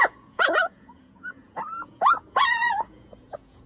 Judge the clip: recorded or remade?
remade